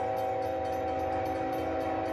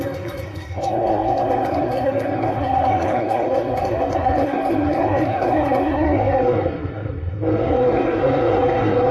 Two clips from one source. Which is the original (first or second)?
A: first